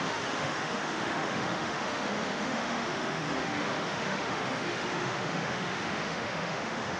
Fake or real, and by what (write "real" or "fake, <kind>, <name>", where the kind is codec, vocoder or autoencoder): fake, autoencoder, DAC-VAE